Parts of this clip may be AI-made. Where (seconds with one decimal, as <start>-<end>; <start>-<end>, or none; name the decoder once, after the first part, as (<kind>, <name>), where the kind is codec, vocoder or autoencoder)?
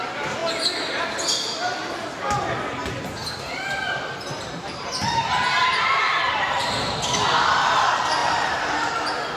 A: 3.2-6.6 (vocoder, BigVGAN v2); 8.2-8.9